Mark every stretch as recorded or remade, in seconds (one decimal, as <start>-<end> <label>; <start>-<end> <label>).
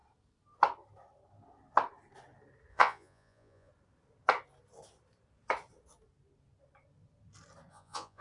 0.0-2.7 recorded; 2.7-3.7 remade; 3.7-7.7 recorded; 7.7-8.2 remade